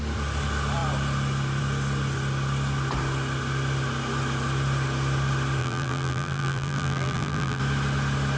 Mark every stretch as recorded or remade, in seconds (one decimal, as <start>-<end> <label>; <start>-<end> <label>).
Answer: 0.0-5.6 recorded; 5.6-7.6 remade; 7.6-8.4 recorded